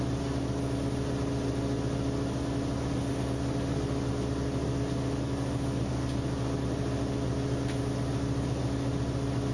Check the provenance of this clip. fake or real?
real